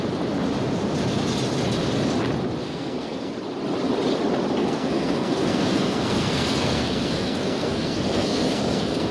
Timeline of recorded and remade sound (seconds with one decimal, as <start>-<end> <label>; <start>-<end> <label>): 0.0-2.6 recorded; 2.6-3.3 remade; 3.3-4.6 recorded; 4.6-9.1 remade